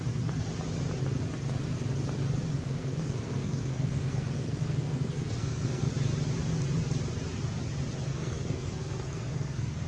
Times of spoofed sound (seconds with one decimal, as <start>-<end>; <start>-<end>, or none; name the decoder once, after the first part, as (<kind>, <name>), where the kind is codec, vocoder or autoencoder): 2.5-5.9 (codec, SNAC); 8.1-9.9